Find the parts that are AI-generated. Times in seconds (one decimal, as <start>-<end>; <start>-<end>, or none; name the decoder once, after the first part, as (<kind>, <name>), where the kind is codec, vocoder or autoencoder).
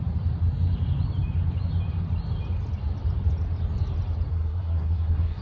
4.3-5.4 (codec, SNAC)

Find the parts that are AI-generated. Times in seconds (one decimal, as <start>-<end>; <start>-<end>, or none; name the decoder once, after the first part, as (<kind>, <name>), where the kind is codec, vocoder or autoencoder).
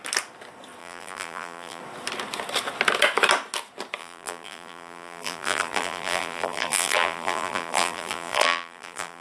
0.8-1.8 (vocoder, BigVGAN v2); 4.0-9.2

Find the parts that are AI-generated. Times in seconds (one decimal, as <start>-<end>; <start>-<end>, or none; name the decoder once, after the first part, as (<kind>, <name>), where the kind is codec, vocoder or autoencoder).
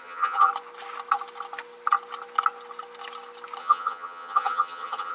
0.0-0.5 (vocoder, HiFi-GAN); 3.6-5.1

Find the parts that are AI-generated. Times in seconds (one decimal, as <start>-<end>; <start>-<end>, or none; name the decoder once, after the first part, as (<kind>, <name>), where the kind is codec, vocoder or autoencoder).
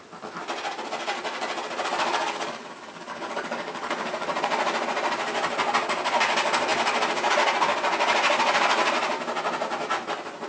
1.9-4.3 (codec, DAC)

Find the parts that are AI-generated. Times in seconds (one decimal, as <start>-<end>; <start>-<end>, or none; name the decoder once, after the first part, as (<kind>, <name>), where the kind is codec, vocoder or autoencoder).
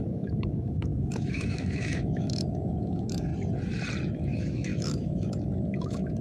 0.0-3.3 (autoencoder, DAC-VAE); 4.1-6.2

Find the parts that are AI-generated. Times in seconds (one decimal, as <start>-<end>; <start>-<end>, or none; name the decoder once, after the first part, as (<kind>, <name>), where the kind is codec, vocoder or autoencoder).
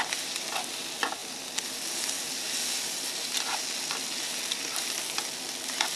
none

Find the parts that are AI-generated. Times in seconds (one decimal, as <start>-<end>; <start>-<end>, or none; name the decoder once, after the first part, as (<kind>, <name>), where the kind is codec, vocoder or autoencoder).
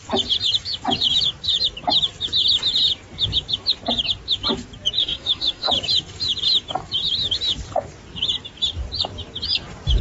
5.0-5.7 (autoencoder, DAC-VAE)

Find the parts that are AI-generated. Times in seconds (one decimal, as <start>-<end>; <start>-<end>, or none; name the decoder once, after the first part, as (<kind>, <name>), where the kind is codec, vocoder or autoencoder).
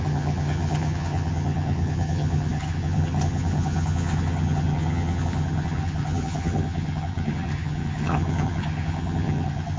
0.0-9.8 (vocoder, HiFi-GAN)